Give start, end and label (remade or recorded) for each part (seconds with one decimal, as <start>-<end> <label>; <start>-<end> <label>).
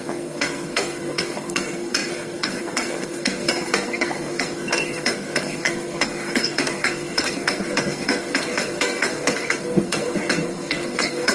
0.0-11.3 remade